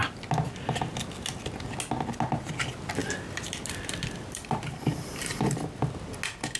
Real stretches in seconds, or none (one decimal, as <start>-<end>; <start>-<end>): 0.0-3.0; 5.7-6.6